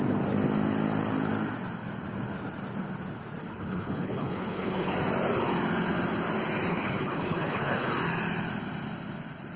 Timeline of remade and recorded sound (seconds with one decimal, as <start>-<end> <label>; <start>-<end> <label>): 0.0-3.4 recorded; 3.4-4.9 remade; 4.9-6.7 recorded; 6.7-7.9 remade; 7.9-9.6 recorded